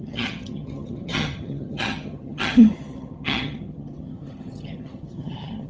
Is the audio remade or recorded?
remade